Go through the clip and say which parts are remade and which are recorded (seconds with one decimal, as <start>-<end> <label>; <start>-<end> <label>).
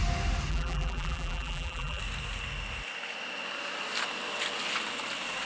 0.0-0.5 recorded; 0.5-2.0 remade; 2.0-5.4 recorded